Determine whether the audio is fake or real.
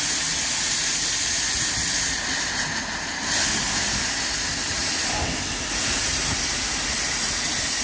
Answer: real